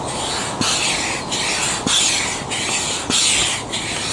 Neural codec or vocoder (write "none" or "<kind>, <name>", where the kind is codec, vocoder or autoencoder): none